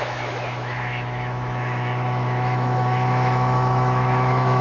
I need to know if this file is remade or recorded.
remade